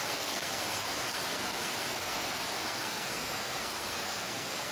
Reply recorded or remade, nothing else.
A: remade